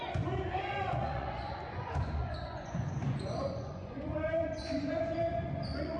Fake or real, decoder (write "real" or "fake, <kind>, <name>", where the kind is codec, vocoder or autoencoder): fake, vocoder, Vocos